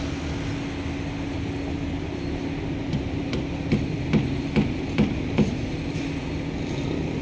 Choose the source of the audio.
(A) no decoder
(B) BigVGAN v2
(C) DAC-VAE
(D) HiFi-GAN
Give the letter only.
A